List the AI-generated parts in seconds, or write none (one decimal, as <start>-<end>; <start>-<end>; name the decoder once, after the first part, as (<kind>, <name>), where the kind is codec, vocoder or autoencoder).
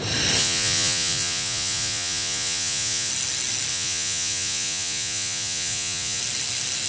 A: 0.4-3.1 (vocoder, Vocos); 3.7-6.2